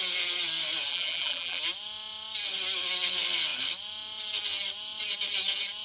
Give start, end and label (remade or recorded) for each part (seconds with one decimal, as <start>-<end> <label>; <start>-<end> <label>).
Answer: 0.0-0.9 recorded; 0.9-1.6 remade; 1.6-5.8 recorded